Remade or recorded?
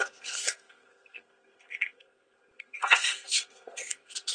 remade